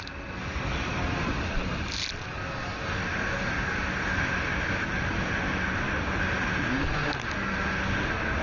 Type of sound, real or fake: real